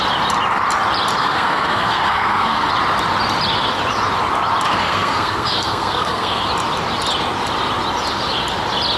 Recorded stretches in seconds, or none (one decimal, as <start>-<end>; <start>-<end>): 0.0-1.2; 2.7-4.7; 6.4-9.0